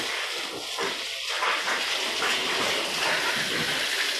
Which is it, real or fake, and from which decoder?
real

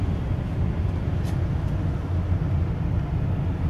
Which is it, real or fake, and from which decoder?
real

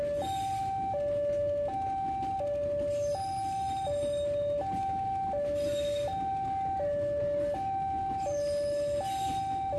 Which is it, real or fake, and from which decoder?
real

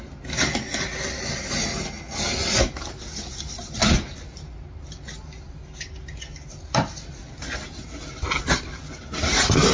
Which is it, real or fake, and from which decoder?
real